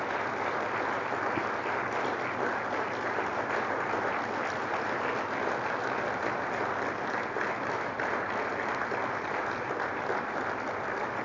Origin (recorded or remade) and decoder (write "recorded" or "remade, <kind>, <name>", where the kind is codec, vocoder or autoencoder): recorded